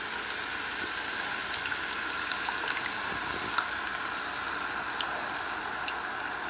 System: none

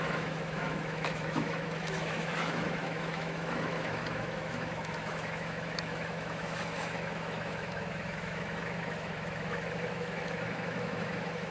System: autoencoder, DAC-VAE